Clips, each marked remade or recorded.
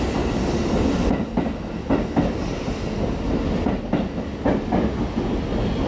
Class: recorded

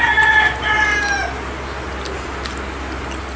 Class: recorded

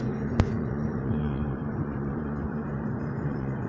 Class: remade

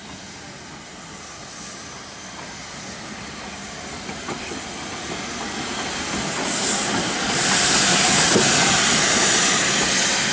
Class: recorded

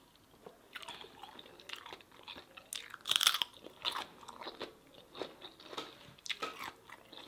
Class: recorded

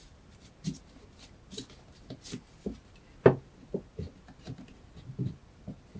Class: recorded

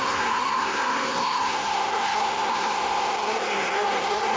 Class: remade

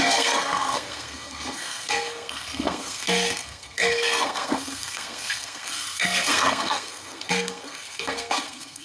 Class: remade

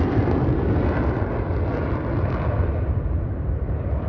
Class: recorded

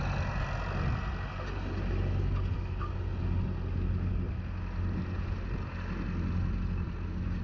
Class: recorded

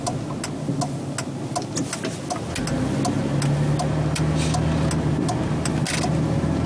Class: recorded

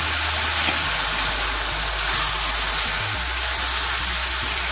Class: recorded